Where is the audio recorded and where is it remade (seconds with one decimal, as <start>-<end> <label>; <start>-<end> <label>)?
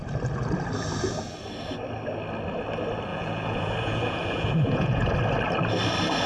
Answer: 0.0-3.1 recorded; 3.1-5.1 remade; 5.1-6.3 recorded